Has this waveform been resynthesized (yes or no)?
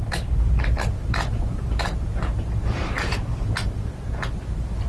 no